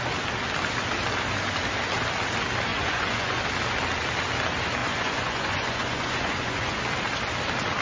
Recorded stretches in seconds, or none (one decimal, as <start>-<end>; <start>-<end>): 0.0-2.7; 3.4-4.8; 6.8-7.8